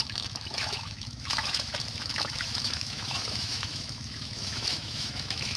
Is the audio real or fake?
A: fake